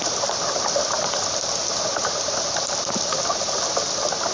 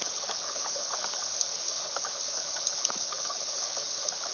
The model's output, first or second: second